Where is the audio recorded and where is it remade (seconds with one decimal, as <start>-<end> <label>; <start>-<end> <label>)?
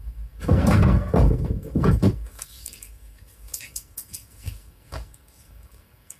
0.0-6.2 remade